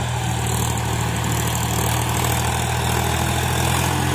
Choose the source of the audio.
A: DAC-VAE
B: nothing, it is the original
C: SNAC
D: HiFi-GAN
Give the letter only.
B